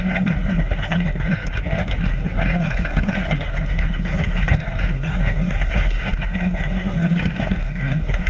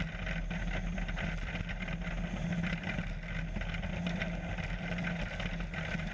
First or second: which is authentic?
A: second